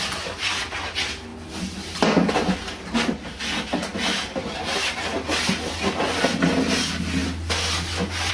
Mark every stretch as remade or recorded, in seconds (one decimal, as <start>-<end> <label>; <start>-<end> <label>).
0.0-8.3 recorded